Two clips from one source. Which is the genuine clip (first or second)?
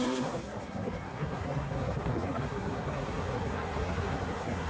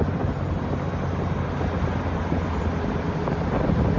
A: second